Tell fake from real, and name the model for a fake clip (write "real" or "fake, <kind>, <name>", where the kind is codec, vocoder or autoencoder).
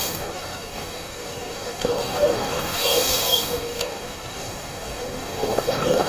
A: fake, codec, DAC